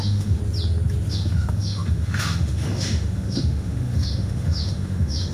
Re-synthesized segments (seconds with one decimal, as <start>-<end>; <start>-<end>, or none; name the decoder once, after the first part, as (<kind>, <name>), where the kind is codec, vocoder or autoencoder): 0.0-0.4 (autoencoder, DAC-VAE); 1.1-5.3